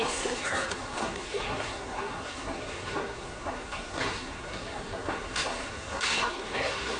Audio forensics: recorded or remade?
remade